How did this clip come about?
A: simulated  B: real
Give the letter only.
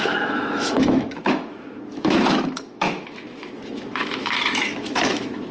A